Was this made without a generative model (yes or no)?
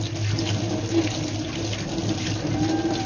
yes